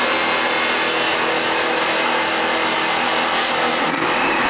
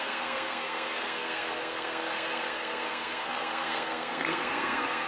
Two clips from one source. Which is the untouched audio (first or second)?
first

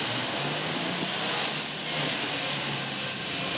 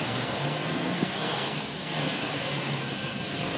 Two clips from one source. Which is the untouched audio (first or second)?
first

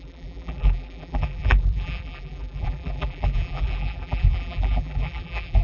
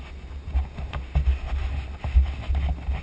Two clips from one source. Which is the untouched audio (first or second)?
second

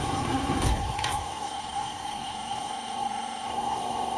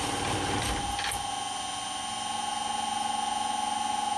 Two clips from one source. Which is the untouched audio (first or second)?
second